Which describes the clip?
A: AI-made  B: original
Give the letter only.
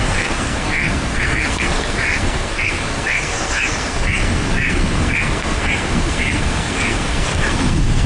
A